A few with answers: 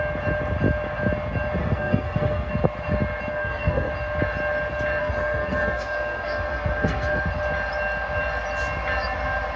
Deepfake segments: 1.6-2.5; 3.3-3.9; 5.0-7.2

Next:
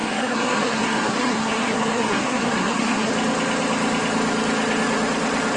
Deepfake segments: 0.0-3.1

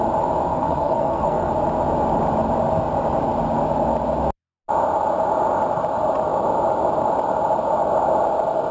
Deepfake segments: 0.5-1.5

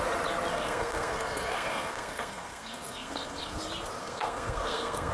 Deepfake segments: 0.5-3.6; 4.0-5.1

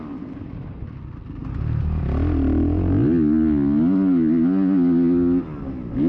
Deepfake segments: none

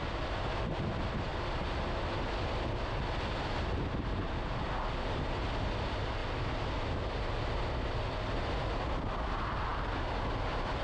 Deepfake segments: none

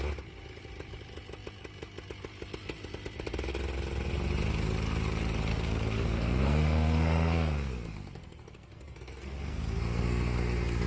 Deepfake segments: 5.5-10.9